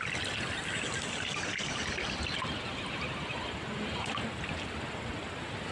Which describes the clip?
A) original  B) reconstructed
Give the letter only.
A